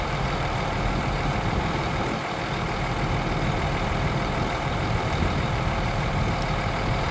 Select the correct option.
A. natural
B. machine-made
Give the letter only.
B